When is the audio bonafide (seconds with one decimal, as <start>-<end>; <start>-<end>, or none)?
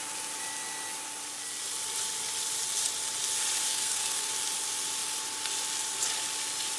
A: 0.0-3.7; 4.3-6.8